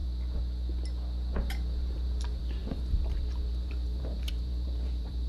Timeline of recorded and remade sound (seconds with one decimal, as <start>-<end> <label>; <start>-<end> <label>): 0.0-1.4 recorded; 1.4-5.3 remade